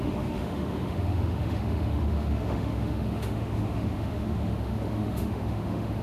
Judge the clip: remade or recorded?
remade